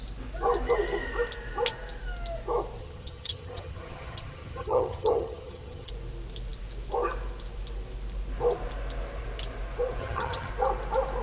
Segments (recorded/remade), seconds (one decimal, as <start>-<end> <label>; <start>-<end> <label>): 0.0-2.8 recorded; 2.8-5.9 remade; 5.9-10.0 recorded; 10.0-10.5 remade; 10.5-11.2 recorded